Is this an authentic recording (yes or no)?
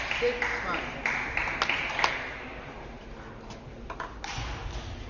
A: yes